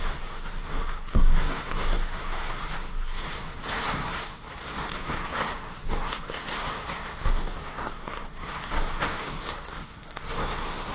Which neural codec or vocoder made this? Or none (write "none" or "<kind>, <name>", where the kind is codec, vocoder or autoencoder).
codec, SNAC